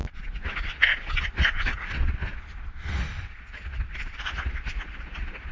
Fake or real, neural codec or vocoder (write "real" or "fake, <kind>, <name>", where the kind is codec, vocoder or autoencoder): real